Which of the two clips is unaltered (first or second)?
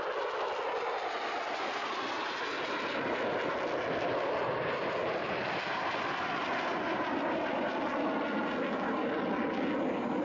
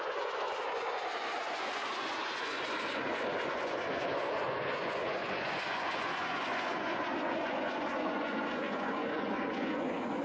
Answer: first